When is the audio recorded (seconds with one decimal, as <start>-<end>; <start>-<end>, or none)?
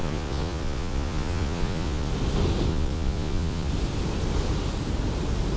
2.1-2.7; 3.7-5.6